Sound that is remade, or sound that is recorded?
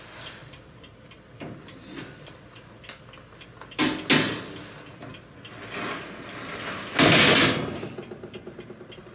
recorded